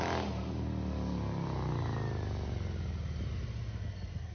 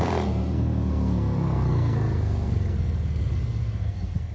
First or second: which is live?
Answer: first